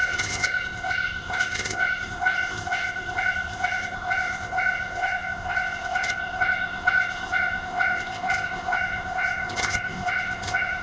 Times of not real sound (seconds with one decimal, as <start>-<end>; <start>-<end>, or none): 0.0-10.8